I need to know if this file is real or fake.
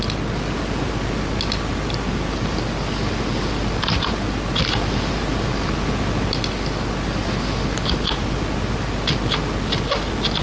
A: real